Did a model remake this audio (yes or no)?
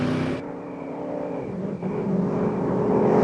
no